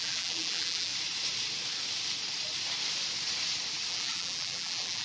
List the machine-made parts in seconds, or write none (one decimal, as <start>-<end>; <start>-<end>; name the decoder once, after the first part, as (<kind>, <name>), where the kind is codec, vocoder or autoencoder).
0.0-0.9 (vocoder, BigVGAN v2); 3.9-5.0